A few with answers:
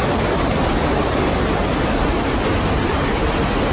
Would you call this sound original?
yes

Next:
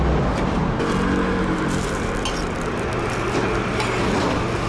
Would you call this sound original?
yes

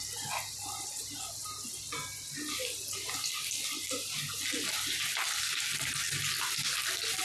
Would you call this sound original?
yes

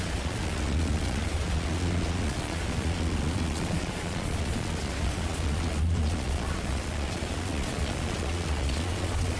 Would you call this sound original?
no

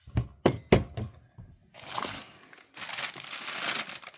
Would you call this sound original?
yes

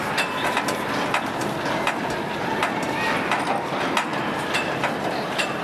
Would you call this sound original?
yes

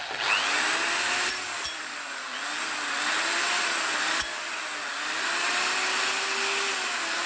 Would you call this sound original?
yes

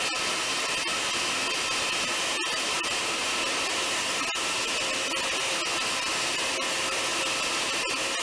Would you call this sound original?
yes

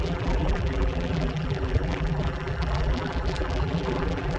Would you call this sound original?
no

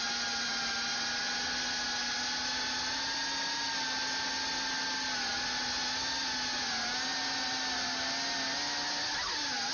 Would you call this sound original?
yes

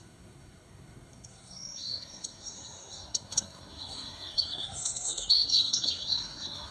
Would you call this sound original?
no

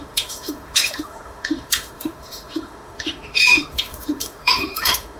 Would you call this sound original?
no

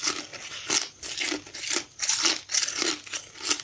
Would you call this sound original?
yes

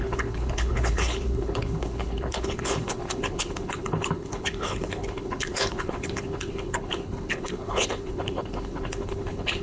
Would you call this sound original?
no